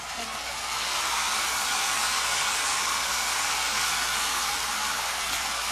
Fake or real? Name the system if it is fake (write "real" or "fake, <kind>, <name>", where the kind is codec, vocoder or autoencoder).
fake, codec, SNAC